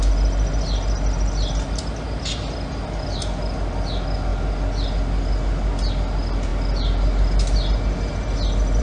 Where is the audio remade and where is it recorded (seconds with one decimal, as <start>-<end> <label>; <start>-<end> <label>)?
0.0-8.8 recorded